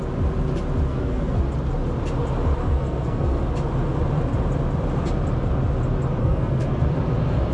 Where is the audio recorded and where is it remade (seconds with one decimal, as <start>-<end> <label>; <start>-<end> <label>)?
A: 0.0-0.9 recorded; 0.9-1.4 remade; 1.4-2.6 recorded; 2.6-3.4 remade; 3.4-6.2 recorded; 6.2-6.9 remade; 6.9-7.5 recorded